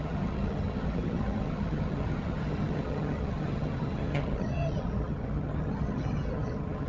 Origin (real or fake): fake